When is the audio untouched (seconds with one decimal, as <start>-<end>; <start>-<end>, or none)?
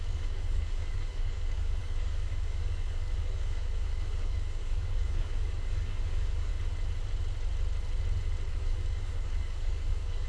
6.5-8.5